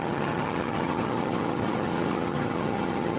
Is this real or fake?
fake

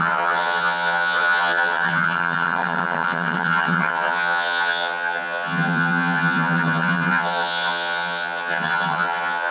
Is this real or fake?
fake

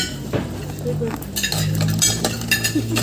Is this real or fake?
real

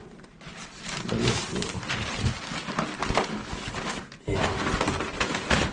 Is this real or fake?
real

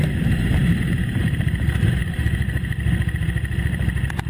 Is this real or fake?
fake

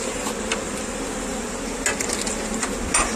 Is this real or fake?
real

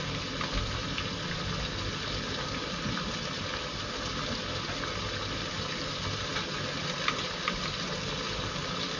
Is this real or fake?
real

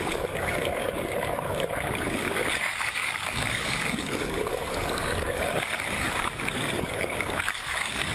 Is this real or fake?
fake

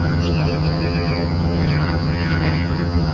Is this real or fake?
fake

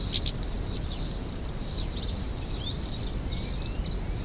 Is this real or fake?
real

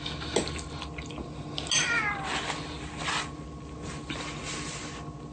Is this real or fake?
real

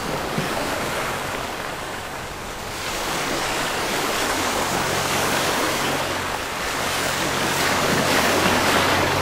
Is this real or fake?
fake